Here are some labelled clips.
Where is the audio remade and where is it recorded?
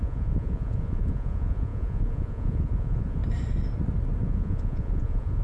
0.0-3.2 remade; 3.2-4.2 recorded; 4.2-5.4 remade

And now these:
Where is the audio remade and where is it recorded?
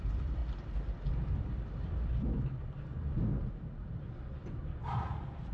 0.0-0.4 remade; 0.4-1.3 recorded; 1.3-3.2 remade; 3.2-5.5 recorded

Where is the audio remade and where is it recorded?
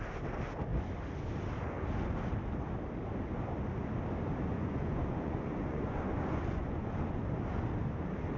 0.0-4.5 recorded; 4.5-7.2 remade; 7.2-8.4 recorded